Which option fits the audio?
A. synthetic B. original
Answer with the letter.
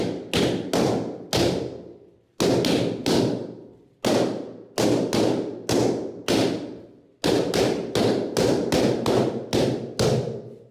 B